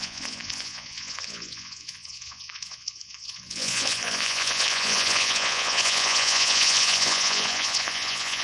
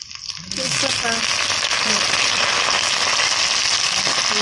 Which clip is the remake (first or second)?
first